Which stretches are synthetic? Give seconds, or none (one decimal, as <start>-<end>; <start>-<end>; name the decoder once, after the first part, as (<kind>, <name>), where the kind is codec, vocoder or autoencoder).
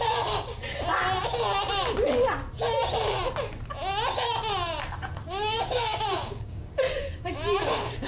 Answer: 0.0-0.6 (codec, DAC); 5.2-8.1